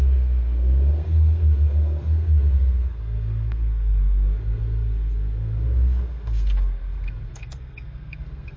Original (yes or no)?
no